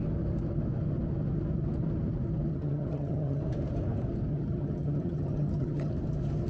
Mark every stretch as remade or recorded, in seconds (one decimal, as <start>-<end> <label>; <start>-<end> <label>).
0.0-2.5 recorded; 2.5-3.4 remade; 3.4-4.3 recorded; 4.3-5.9 remade; 5.9-6.5 recorded

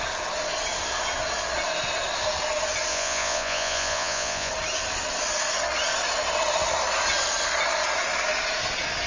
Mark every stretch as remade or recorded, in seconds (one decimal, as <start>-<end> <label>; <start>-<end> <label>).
0.0-2.9 recorded; 2.9-4.5 remade; 4.5-9.1 recorded

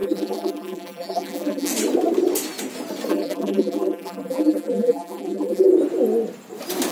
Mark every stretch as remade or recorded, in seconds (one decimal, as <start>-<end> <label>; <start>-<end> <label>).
0.0-1.7 remade; 1.7-3.1 recorded; 3.1-5.7 remade; 5.7-6.9 recorded

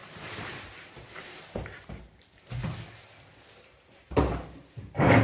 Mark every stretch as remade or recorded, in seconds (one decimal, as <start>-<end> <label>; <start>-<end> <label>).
0.0-2.6 remade; 2.6-3.5 recorded; 3.5-5.2 remade

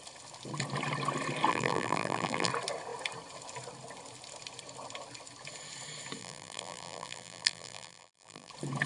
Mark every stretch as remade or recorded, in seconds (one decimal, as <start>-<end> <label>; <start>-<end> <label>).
0.0-1.5 recorded; 1.5-2.5 remade; 2.5-6.2 recorded; 6.2-8.5 remade; 8.5-8.9 recorded